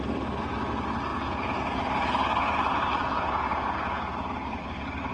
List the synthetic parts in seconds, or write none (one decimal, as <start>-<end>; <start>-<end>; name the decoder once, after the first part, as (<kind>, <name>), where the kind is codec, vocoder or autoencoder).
1.1-1.8 (vocoder, Vocos); 3.0-4.0